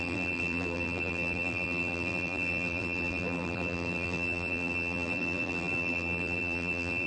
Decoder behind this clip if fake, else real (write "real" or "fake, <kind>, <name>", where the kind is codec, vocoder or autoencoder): fake, vocoder, BigVGAN v2